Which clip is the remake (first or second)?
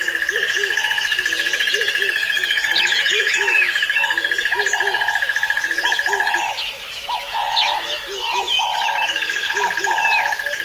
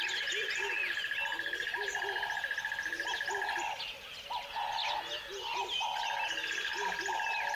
first